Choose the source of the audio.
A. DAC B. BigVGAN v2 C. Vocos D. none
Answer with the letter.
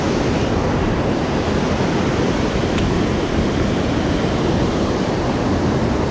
D